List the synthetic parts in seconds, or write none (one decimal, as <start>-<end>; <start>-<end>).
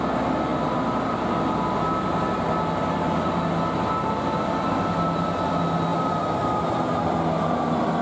5.9-6.5